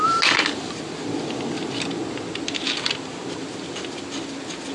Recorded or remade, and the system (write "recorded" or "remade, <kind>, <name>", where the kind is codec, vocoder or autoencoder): recorded